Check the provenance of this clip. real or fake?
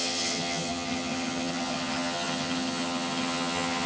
fake